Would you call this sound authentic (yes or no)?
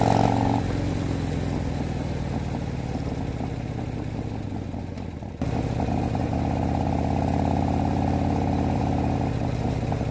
yes